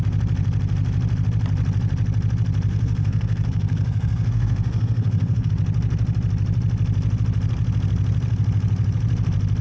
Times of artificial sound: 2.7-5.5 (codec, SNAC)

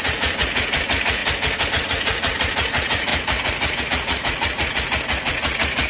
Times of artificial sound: 0.0-1.2 (vocoder, Vocos); 1.7-5.9

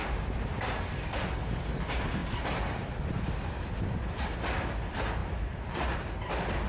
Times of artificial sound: 0.0-0.6 (vocoder, BigVGAN v2); 2.2-2.9; 5.2-6.3